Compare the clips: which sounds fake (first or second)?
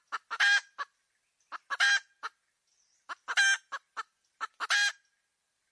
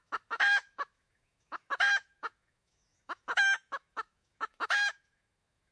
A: second